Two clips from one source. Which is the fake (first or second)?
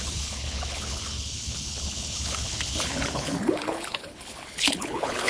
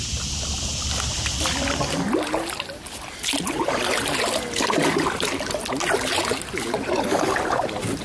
first